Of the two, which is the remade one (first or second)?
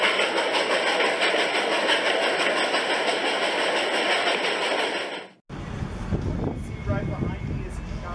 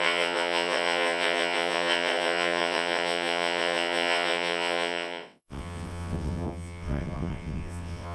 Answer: second